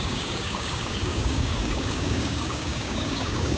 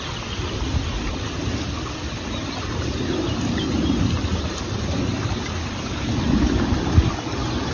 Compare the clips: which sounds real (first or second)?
second